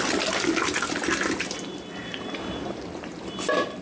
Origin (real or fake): real